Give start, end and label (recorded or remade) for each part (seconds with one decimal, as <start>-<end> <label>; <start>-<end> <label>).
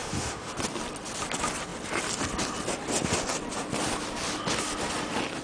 0.0-0.5 remade; 0.5-5.4 recorded